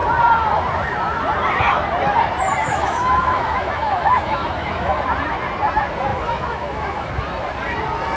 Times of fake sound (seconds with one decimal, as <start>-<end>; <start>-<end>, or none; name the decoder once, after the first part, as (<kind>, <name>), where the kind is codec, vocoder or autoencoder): 2.6-5.0 (autoencoder, DAC-VAE); 6.1-7.1